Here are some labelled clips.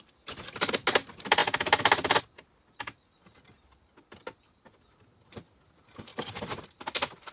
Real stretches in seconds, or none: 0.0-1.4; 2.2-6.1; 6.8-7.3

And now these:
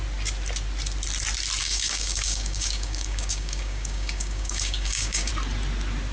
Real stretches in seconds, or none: 0.0-1.6; 5.3-6.1

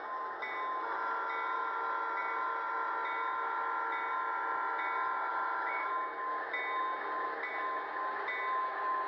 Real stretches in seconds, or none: 0.0-5.3; 5.9-9.1